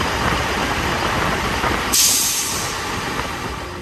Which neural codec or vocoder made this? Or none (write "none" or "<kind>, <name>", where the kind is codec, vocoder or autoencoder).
none